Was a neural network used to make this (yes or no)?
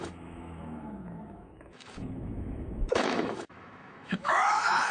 yes